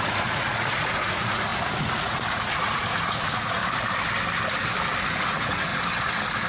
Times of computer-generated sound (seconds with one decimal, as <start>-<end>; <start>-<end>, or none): 0.0-3.6; 5.1-5.7